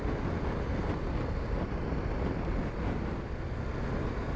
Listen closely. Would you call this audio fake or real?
real